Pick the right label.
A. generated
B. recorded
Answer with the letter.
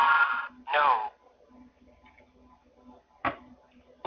B